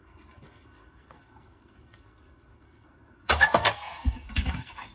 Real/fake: fake